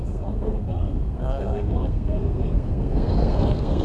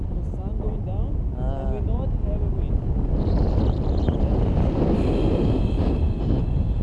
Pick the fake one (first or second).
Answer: first